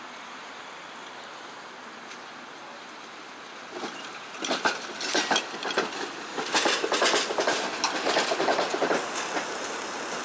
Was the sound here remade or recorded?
recorded